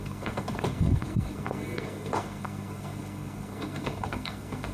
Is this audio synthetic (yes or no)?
yes